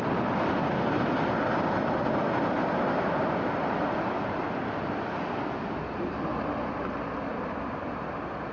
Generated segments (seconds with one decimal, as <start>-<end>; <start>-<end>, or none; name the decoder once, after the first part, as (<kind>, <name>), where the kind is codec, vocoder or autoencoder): none

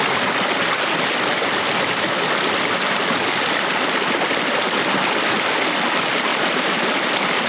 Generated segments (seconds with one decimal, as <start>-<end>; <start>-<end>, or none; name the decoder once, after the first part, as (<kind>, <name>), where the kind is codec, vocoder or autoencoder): 6.3-6.9 (vocoder, BigVGAN v2)

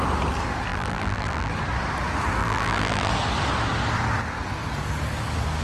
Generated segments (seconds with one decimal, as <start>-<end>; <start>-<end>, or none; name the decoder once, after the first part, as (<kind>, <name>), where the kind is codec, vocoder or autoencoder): 0.7-1.5 (vocoder, BigVGAN v2); 2.4-3.1